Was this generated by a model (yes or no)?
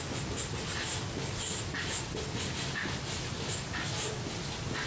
no